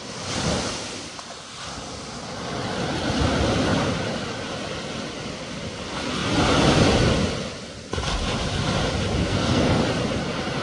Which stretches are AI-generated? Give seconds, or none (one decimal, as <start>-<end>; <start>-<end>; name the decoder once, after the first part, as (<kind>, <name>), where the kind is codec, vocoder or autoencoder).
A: 9.2-9.8 (codec, SNAC)